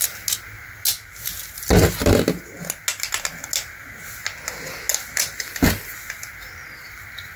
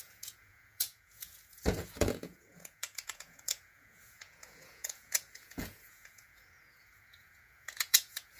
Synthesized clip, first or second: second